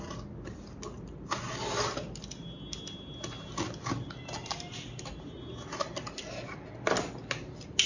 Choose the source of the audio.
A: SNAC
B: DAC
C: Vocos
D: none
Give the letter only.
D